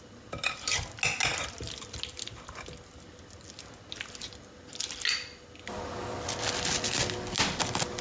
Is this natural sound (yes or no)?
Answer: yes